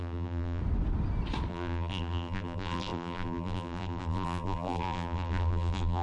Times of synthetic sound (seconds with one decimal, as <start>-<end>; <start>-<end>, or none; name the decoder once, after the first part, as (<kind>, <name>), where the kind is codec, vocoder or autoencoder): 0.0-0.6 (vocoder, BigVGAN v2); 1.5-6.0